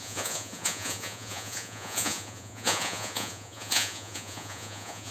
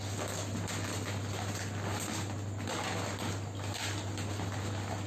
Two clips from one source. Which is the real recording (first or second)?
second